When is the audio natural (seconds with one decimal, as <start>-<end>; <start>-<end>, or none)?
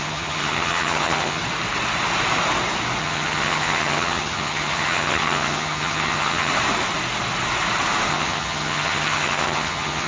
1.4-3.0; 6.5-8.1